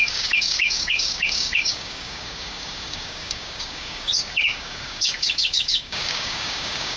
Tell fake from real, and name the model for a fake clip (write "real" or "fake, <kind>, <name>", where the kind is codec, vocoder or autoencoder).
fake, codec, DAC